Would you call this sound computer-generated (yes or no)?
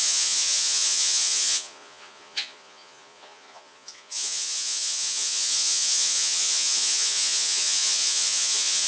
yes